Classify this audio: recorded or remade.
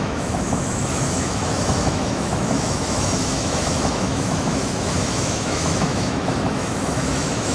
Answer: remade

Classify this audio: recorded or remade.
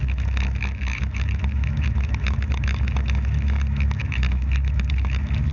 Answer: remade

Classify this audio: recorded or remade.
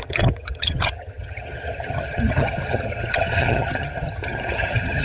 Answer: remade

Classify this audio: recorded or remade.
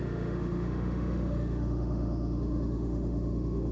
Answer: remade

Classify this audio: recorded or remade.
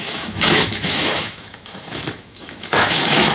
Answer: remade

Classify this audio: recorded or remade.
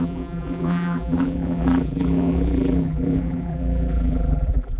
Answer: remade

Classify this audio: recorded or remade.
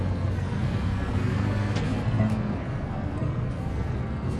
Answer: remade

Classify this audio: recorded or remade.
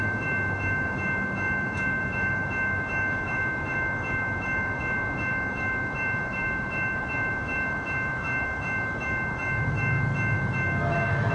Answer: remade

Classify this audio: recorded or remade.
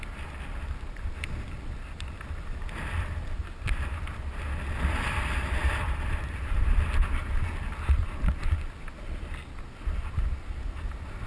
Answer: recorded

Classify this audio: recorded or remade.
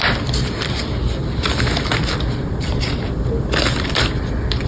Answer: remade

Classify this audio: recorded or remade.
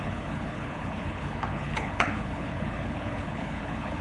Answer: remade